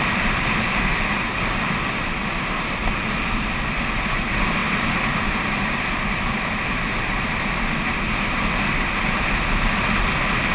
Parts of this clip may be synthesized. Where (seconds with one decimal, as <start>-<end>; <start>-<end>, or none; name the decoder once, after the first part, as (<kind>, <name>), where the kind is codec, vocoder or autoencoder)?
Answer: 0.0-4.6 (vocoder, BigVGAN v2); 5.2-10.5